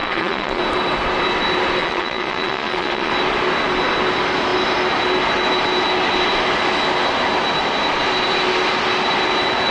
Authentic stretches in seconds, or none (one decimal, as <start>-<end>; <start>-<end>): 0.6-1.8; 3.1-9.7